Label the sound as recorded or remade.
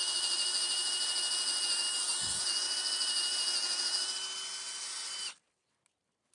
recorded